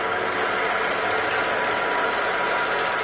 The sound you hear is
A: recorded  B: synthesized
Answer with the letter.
A